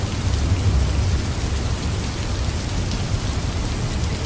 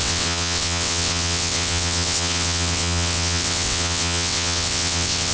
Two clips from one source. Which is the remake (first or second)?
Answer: second